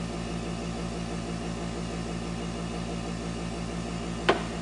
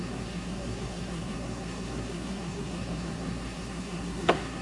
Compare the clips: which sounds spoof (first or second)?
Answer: second